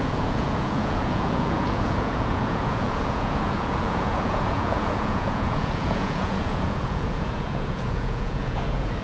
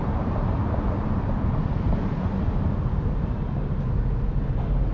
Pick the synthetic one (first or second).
first